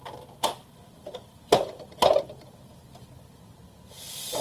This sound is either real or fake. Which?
fake